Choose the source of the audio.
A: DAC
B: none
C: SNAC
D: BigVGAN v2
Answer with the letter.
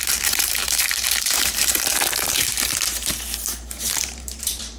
D